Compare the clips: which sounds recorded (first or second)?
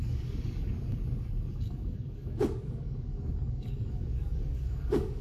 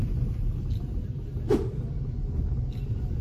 second